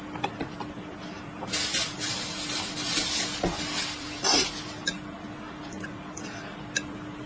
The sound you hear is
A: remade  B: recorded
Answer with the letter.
B